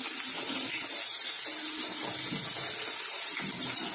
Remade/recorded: recorded